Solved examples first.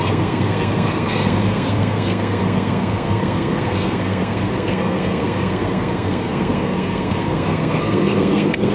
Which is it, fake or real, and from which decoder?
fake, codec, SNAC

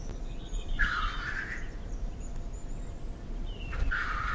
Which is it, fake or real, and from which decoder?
real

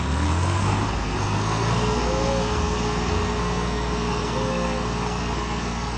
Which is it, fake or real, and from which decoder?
fake, codec, SNAC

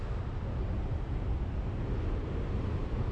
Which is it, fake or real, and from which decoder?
real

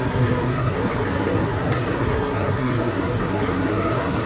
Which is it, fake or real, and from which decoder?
fake, codec, SNAC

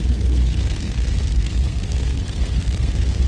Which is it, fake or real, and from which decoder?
fake, codec, SNAC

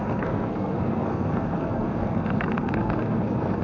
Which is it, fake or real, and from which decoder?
fake, codec, SNAC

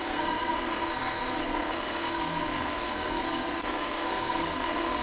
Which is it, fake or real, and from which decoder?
fake, codec, SNAC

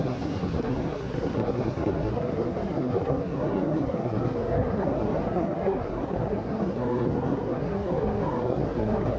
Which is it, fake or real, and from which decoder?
fake, codec, SNAC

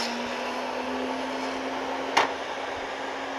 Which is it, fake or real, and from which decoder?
real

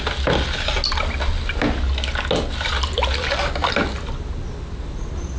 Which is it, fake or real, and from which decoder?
real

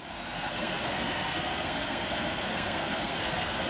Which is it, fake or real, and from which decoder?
fake, codec, SNAC